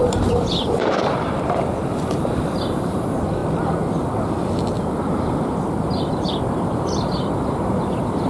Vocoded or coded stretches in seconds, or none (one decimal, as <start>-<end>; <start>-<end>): 0.0-3.4; 6.5-8.3